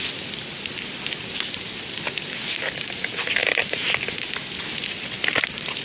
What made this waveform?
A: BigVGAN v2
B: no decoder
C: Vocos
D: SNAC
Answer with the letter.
B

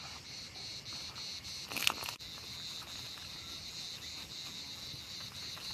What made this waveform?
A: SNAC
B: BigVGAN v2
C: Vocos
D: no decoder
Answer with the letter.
D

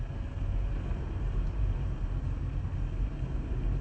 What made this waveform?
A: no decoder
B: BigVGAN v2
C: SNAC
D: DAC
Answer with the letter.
A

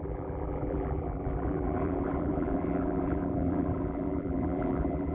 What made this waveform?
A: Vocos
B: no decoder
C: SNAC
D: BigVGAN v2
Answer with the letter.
D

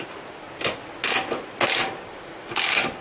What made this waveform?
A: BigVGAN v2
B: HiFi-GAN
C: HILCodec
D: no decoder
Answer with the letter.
D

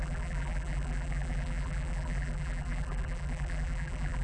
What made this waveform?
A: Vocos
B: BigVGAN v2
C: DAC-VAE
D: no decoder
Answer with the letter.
B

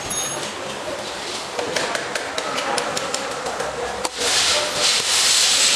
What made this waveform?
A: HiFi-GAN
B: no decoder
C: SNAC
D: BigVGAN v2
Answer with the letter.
D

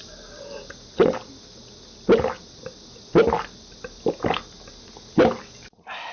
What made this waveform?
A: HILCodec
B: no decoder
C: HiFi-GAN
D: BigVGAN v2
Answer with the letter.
B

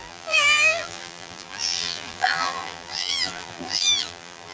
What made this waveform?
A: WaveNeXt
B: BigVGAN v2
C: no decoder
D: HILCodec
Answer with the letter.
B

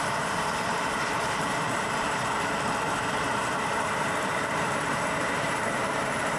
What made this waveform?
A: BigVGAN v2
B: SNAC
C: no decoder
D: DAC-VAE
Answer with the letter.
A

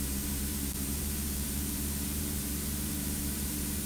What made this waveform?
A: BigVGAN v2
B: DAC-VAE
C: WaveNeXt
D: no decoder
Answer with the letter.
A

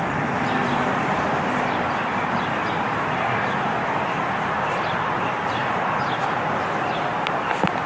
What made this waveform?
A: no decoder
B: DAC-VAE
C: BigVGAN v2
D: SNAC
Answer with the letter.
C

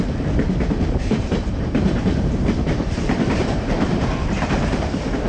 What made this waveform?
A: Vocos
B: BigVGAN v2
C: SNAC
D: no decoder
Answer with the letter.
B